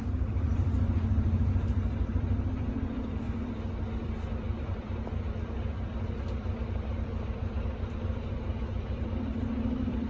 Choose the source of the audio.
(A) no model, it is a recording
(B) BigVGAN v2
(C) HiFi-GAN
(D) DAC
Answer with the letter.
B